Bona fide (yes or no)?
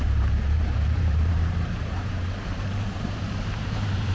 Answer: no